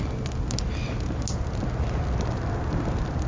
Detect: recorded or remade recorded